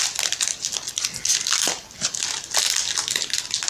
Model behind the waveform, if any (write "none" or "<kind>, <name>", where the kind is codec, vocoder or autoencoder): none